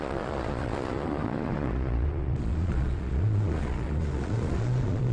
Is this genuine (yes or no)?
no